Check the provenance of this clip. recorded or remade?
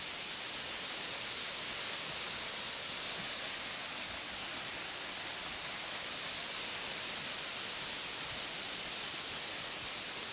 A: recorded